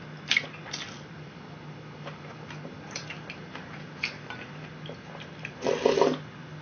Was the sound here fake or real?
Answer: real